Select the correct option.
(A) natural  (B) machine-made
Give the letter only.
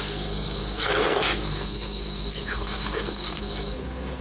B